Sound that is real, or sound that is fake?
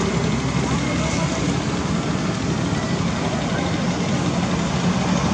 real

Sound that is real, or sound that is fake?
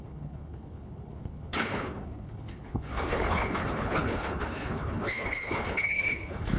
fake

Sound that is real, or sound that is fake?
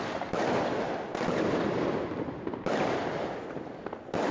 real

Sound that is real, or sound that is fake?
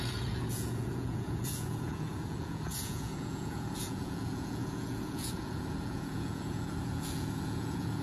fake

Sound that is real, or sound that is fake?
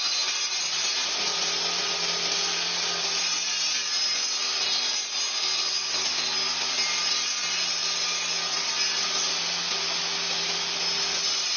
real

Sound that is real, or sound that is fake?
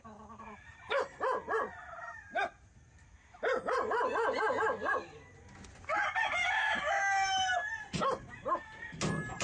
real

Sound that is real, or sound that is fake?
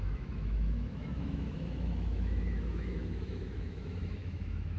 fake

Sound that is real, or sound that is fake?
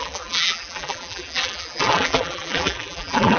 fake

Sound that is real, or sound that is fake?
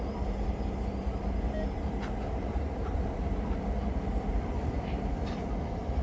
fake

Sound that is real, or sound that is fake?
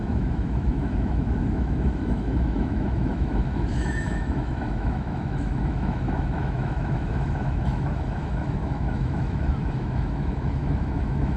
fake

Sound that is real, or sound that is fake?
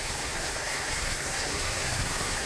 fake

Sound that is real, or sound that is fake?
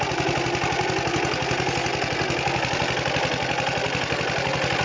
real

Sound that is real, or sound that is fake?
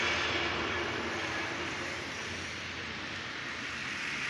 fake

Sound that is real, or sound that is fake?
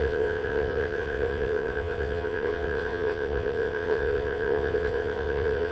fake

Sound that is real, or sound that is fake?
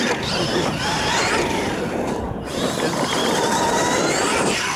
real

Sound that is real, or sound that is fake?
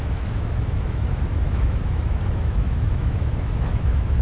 fake